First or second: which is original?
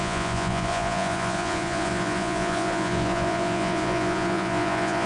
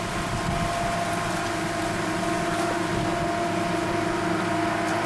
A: second